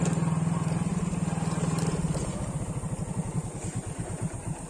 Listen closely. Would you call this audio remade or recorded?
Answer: recorded